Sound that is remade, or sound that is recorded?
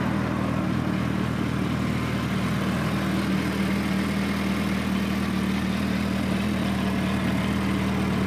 recorded